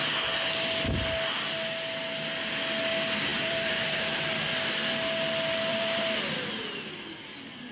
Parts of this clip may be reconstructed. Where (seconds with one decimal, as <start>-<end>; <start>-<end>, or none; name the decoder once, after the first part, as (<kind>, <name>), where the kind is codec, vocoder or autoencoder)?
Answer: 3.3-4.4 (vocoder, BigVGAN v2); 5.7-6.2